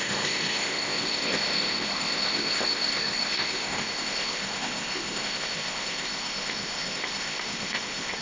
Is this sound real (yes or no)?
no